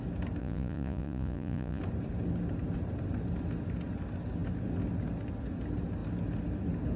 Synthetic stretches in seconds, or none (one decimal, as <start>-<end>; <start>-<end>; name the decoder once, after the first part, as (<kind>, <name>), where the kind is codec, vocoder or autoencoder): 0.4-1.8 (vocoder, Vocos)